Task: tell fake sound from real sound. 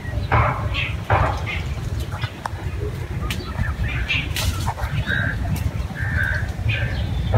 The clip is real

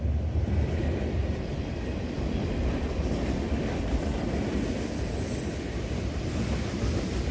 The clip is fake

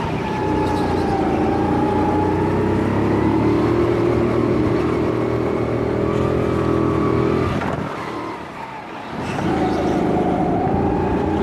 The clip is real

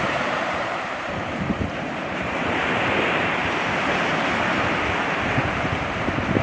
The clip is fake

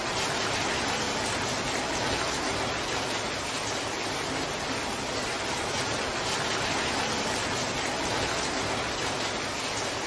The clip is real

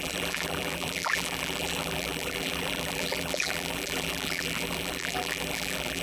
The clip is fake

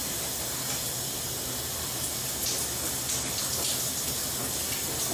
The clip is real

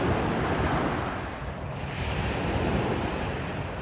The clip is fake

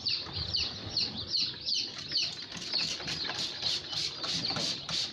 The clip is fake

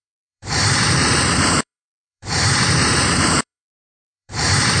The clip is fake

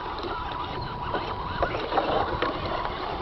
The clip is fake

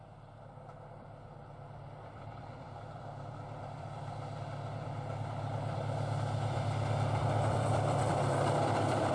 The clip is fake